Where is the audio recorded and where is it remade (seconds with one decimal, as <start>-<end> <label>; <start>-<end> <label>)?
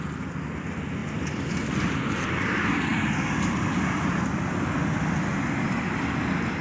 0.0-6.6 recorded